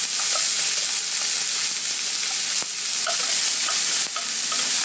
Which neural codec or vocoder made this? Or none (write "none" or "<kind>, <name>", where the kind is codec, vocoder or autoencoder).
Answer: none